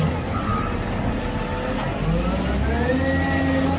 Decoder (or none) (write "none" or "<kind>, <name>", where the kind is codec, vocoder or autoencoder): none